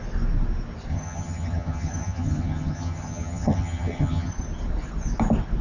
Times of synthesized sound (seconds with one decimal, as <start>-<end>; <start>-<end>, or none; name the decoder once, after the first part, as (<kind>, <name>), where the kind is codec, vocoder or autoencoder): 0.9-4.3 (vocoder, HiFi-GAN)